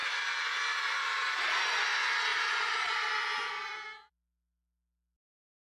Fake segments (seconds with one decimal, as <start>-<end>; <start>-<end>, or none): 2.3-2.9; 3.6-4.1